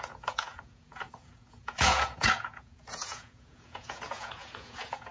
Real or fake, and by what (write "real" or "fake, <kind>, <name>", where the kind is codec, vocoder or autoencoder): fake, vocoder, Vocos